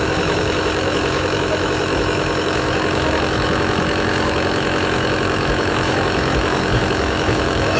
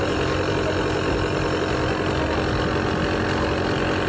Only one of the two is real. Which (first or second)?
second